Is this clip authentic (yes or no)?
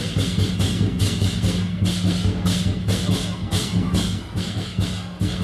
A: no